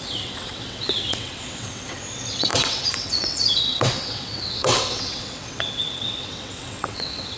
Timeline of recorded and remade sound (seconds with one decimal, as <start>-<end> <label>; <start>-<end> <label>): 0.0-7.4 remade